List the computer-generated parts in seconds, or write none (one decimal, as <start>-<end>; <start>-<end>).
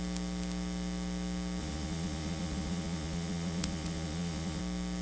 1.6-4.6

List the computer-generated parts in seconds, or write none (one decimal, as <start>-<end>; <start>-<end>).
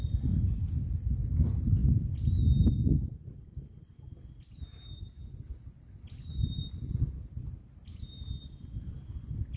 none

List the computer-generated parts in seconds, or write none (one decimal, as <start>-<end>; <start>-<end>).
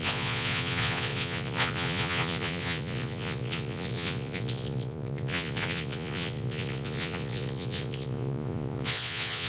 0.0-9.5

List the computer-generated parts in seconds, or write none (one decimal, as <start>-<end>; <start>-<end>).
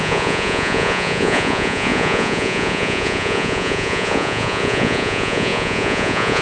0.0-6.4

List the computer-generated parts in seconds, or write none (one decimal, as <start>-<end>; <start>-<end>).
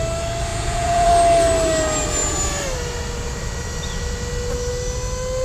0.5-1.1